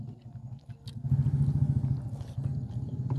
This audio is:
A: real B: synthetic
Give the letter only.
A